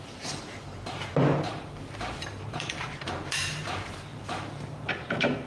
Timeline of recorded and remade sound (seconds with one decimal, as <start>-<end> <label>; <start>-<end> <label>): 0.0-5.5 remade